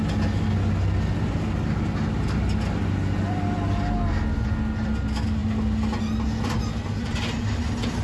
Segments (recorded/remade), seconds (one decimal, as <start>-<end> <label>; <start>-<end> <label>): 0.0-8.0 recorded